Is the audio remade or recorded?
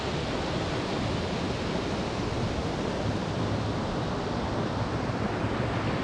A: recorded